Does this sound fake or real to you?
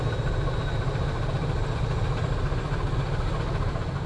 real